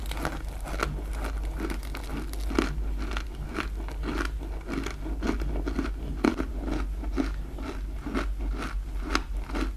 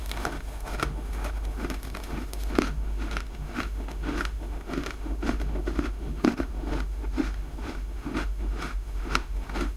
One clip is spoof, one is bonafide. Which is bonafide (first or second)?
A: first